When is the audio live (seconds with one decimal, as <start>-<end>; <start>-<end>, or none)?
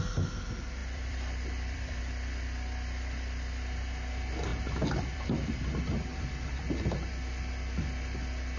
0.0-0.8; 2.0-4.5; 6.6-8.6